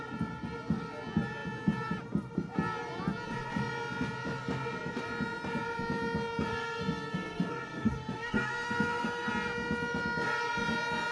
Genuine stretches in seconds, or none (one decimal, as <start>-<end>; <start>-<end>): 0.0-6.5; 9.3-11.1